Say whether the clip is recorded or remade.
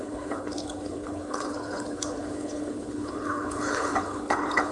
remade